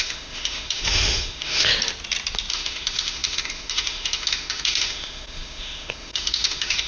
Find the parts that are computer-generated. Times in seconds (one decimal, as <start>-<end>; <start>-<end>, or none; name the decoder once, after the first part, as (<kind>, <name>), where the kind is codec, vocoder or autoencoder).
0.0-1.7 (autoencoder, DAC-VAE); 2.5-6.9

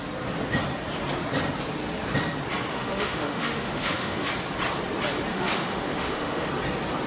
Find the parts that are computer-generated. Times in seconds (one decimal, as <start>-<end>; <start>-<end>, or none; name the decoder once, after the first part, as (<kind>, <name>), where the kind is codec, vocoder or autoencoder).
2.7-4.3 (autoencoder, DAC-VAE); 5.3-6.5

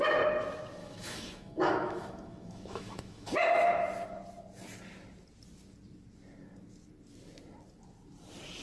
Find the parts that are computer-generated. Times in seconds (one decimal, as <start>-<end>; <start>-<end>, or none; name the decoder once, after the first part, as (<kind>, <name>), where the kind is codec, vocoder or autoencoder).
0.8-3.3 (autoencoder, DAC-VAE)

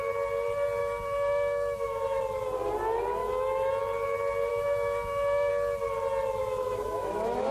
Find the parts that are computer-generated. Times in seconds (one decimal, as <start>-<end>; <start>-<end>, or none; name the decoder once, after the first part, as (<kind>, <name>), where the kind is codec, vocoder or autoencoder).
0.8-2.2 (autoencoder, DAC-VAE); 3.2-3.7; 4.5-5.5; 6.4-7.5